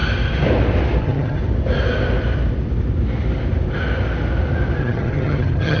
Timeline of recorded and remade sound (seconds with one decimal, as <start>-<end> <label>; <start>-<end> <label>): 0.0-1.0 recorded; 1.0-1.4 remade; 1.4-4.8 recorded; 4.8-5.8 remade